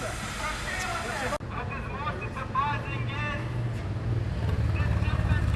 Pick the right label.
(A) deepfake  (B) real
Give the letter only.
B